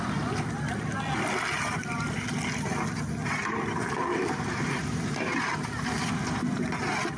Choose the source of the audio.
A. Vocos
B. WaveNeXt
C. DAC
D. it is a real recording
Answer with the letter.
D